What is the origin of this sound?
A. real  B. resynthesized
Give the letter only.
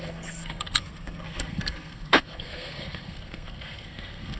B